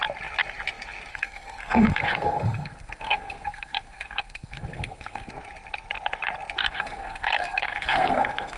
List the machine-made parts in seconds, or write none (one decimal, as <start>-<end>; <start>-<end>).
1.1-5.3; 6.6-8.6